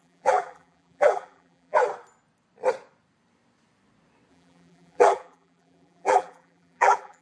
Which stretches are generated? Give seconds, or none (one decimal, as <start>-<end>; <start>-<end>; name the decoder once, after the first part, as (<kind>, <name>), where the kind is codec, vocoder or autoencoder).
0.0-1.9 (vocoder, BigVGAN v2); 4.3-7.2